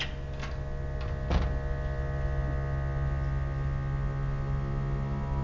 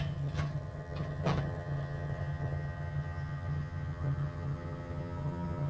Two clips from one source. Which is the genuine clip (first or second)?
first